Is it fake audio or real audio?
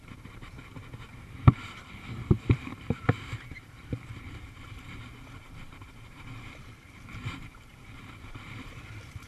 fake